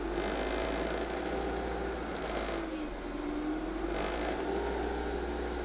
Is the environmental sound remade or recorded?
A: recorded